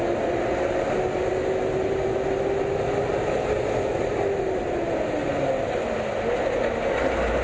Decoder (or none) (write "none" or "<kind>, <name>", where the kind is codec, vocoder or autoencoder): none